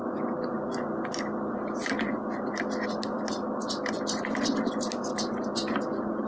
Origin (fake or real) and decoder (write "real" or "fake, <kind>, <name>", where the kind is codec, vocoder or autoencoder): real